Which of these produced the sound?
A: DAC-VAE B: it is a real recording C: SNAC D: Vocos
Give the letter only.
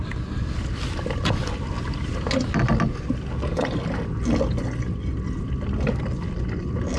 B